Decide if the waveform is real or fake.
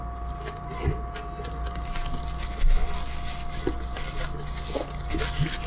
real